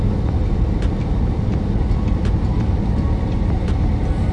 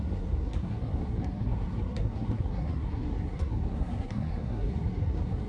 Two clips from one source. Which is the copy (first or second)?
second